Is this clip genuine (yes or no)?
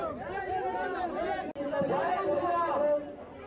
yes